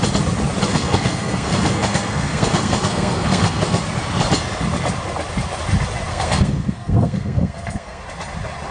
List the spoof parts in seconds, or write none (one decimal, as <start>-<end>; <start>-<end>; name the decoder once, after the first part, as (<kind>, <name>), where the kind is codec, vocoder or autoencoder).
0.7-3.8 (codec, SNAC); 6.1-8.0